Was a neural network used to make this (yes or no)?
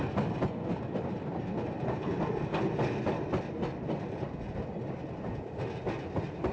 no